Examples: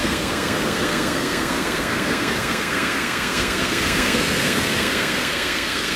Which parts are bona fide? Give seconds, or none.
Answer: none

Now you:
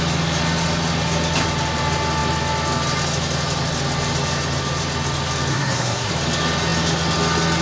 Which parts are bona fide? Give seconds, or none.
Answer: 0.0-5.5; 6.1-7.6

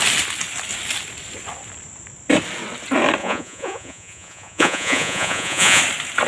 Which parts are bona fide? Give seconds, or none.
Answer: 0.0-3.2; 5.8-6.3